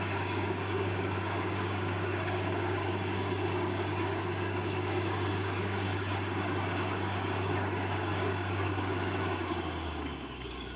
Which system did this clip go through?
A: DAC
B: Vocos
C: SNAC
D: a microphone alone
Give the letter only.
A